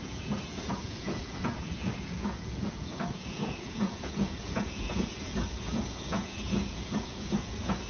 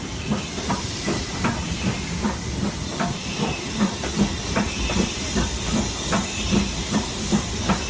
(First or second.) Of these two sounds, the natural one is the second